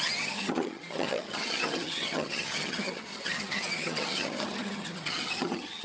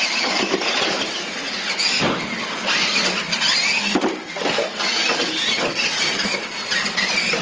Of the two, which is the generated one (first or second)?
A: first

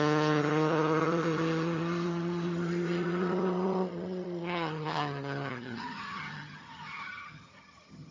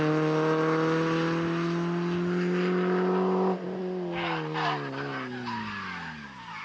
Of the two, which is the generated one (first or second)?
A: first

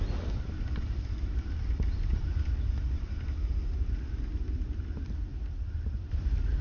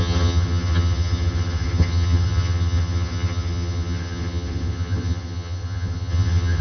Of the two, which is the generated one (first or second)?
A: second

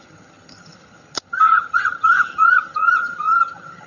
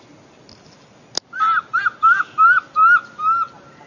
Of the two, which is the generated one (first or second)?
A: first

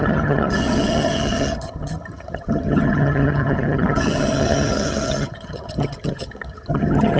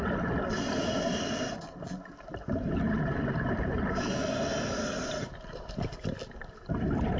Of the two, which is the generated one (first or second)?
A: first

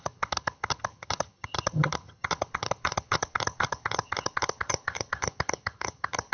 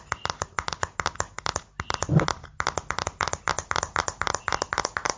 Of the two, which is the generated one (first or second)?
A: first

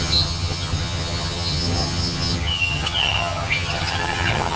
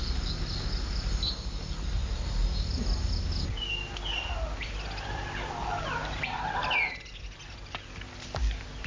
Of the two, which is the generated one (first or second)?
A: first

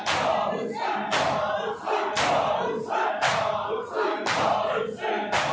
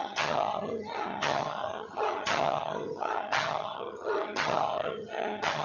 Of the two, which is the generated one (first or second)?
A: second